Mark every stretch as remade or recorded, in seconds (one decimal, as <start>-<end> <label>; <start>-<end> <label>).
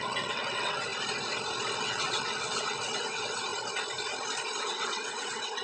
0.0-0.9 remade; 0.9-1.8 recorded; 1.8-3.5 remade; 3.5-4.6 recorded; 4.6-5.6 remade